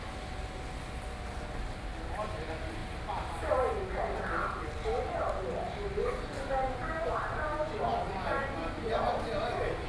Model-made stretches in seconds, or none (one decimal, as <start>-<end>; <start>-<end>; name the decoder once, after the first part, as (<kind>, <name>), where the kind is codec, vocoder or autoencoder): none